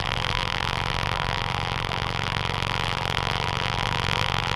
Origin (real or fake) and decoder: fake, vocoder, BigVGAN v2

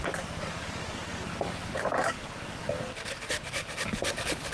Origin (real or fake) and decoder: fake, codec, DAC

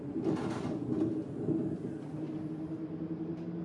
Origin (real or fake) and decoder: real